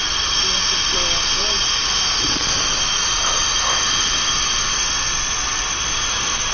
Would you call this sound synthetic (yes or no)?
no